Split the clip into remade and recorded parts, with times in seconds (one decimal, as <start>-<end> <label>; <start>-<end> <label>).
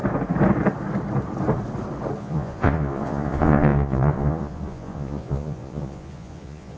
0.0-2.2 recorded; 2.2-6.8 remade